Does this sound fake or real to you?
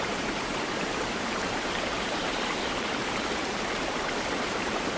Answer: fake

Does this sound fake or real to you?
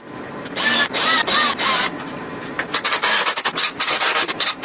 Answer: fake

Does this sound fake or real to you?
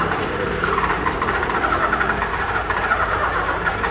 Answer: fake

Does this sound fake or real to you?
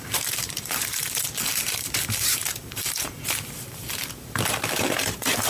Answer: fake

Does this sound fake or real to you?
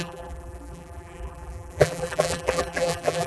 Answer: fake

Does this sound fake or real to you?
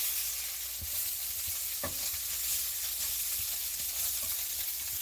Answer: real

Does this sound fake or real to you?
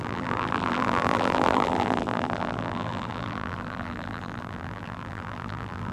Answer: fake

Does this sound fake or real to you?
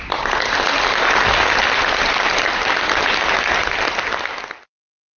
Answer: real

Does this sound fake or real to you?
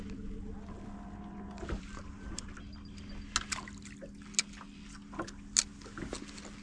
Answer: real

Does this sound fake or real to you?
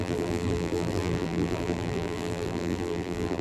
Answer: fake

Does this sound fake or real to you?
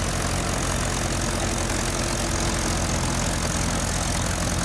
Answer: real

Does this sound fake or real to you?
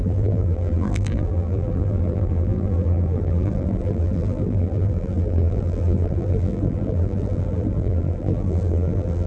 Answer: fake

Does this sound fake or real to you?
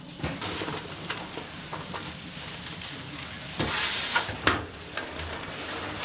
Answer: fake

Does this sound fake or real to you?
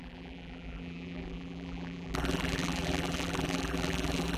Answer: fake